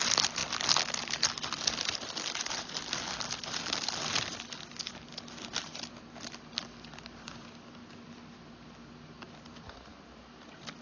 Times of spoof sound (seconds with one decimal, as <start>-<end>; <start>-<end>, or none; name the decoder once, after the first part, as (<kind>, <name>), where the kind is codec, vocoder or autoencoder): none